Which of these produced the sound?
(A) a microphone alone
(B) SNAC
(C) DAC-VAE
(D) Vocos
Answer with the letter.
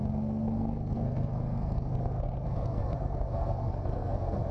B